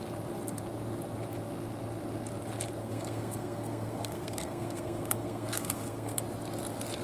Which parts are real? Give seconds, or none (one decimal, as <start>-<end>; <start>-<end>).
0.0-2.8; 6.2-7.0